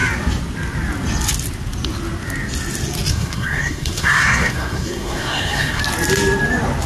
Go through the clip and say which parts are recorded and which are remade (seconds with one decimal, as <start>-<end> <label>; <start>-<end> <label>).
0.0-3.1 recorded; 3.1-5.8 remade; 5.8-6.9 recorded